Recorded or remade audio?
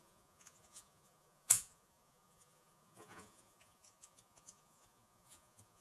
remade